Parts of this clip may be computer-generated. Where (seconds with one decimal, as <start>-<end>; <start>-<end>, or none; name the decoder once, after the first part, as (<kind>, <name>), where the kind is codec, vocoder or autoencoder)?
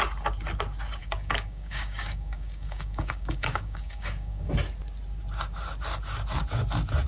1.0-4.5 (codec, DAC)